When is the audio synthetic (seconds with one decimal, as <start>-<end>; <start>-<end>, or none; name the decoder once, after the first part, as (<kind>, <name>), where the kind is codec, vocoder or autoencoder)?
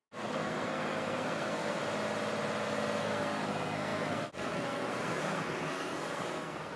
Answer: 0.0-1.8 (codec, SNAC); 3.0-6.8